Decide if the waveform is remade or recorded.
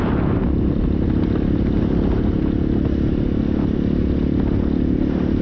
recorded